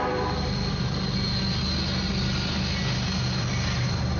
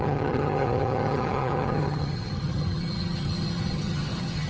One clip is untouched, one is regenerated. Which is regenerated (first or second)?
second